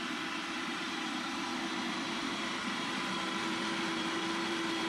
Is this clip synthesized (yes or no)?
yes